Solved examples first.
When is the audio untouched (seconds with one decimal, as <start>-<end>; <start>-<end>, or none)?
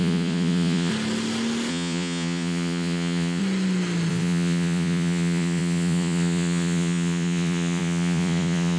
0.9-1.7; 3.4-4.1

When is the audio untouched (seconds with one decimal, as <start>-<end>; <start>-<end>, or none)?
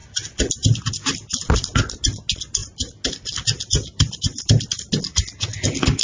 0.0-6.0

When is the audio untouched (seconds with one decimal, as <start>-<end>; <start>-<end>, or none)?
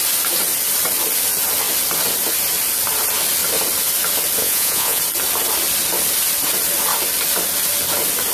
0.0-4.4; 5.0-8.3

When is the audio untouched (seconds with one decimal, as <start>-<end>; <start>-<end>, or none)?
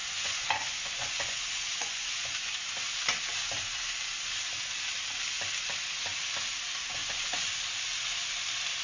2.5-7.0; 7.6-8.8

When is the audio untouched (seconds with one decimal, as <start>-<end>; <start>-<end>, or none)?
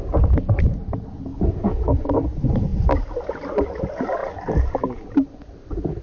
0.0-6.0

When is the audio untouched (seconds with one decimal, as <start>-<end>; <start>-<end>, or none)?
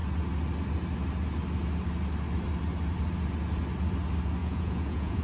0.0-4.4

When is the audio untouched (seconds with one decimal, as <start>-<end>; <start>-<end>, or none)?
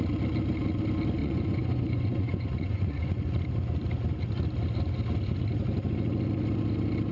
0.0-1.2; 3.2-7.1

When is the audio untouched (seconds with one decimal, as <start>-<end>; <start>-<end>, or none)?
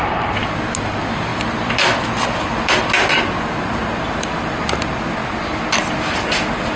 0.0-6.8